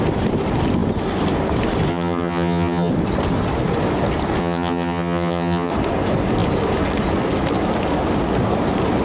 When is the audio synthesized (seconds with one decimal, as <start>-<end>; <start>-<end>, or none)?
1.9-2.9; 4.4-5.7